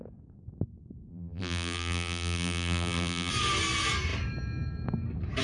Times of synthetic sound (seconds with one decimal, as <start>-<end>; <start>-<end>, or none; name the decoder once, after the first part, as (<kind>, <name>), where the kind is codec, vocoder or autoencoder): 1.1-3.3 (vocoder, BigVGAN v2)